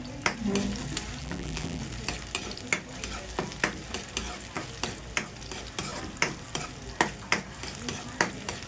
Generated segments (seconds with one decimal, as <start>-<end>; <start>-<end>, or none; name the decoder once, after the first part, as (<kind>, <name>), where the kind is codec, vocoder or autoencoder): 1.2-1.8 (vocoder, BigVGAN v2)